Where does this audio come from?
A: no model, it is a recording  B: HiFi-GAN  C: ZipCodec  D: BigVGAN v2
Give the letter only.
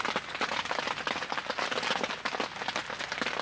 A